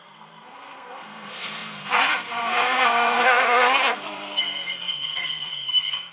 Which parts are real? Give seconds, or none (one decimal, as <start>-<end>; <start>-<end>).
none